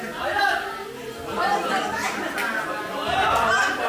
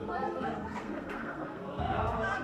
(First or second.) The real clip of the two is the first